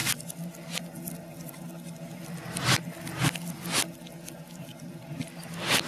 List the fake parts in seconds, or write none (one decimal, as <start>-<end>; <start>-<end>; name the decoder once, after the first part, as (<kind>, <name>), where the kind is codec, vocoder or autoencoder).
none